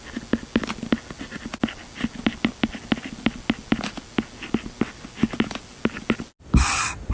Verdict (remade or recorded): recorded